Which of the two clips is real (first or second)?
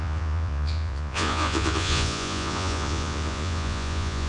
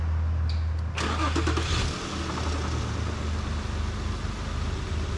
second